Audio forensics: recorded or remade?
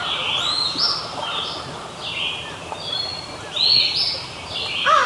recorded